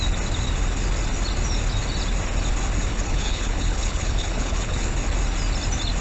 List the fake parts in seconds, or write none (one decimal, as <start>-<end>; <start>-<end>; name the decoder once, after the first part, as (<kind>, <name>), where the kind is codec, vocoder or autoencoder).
2.9-4.9 (codec, HILCodec)

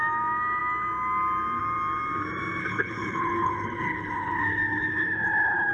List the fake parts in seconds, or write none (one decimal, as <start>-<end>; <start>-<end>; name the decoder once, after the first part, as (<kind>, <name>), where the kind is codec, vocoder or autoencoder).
2.6-5.7 (codec, HILCodec)

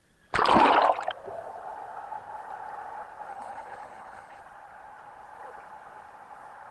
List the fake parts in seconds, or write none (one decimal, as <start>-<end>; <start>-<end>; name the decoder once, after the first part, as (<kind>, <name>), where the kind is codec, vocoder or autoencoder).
3.3-4.4 (codec, HILCodec)